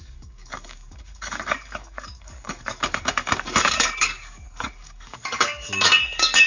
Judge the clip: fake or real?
fake